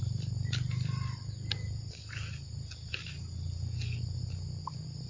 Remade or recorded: recorded